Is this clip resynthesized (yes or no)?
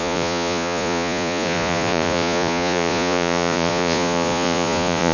yes